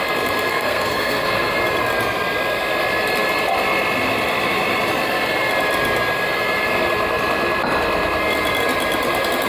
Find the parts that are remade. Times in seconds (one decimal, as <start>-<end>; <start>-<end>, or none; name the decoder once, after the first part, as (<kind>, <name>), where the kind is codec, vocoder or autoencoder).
0.5-1.5 (codec, SNAC)